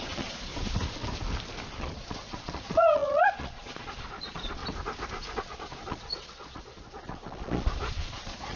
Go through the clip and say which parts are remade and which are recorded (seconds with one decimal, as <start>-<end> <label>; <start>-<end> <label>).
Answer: 0.0-0.5 remade; 0.5-1.8 recorded; 1.8-4.6 remade; 4.6-5.4 recorded; 5.4-8.6 remade